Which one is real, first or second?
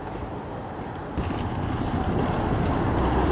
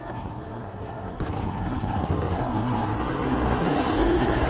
first